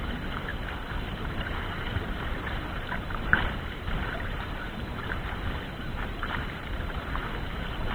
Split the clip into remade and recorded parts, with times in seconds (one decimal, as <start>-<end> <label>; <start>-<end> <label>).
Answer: 0.0-0.5 remade; 0.5-1.2 recorded; 1.2-7.9 remade

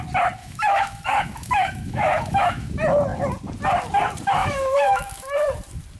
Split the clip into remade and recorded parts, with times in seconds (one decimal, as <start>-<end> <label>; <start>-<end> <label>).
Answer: 0.0-0.4 recorded; 0.4-2.7 remade; 2.7-4.4 recorded; 4.4-5.4 remade; 5.4-6.0 recorded

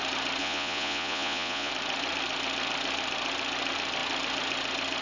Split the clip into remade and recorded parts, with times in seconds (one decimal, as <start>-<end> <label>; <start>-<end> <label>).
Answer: 0.0-0.4 recorded; 0.4-1.7 remade; 1.7-5.0 recorded

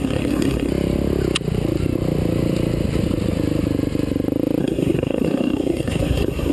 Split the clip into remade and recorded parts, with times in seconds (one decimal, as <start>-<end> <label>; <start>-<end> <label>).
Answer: 0.0-0.7 remade; 0.7-4.6 recorded; 4.6-6.5 remade